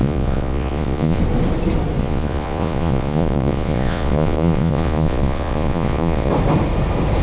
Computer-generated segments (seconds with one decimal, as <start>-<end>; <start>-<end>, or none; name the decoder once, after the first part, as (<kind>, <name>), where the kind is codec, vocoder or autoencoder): 0.0-1.2 (vocoder, Vocos); 2.0-6.3